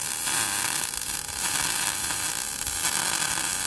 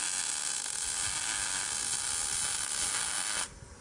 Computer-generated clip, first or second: first